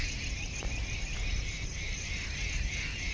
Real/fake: real